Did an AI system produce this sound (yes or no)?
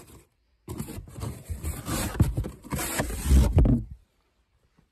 yes